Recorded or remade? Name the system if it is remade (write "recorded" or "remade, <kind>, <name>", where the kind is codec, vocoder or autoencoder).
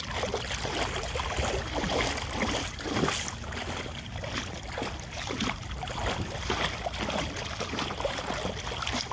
recorded